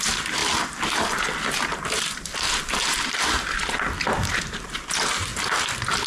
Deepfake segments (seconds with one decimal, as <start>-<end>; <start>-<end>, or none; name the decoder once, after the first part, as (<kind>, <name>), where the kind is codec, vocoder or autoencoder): 0.0-0.4 (vocoder, BigVGAN v2); 4.1-5.3